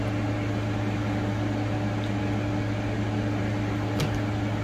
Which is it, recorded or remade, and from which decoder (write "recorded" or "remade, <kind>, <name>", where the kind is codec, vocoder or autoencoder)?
recorded